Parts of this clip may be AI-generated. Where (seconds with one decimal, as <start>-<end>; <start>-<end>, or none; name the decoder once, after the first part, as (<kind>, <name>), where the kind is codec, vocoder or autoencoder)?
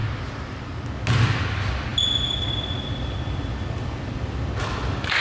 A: none